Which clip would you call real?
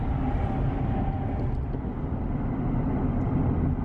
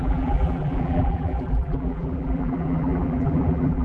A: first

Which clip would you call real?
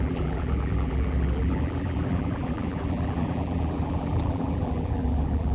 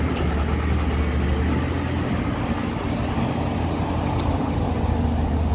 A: second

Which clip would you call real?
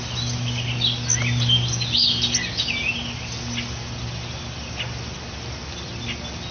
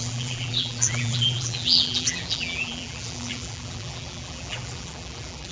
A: first